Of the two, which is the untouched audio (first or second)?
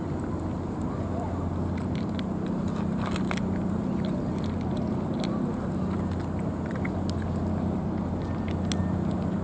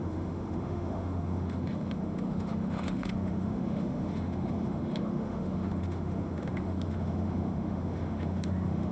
first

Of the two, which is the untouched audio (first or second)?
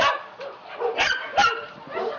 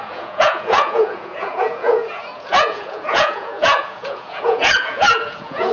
first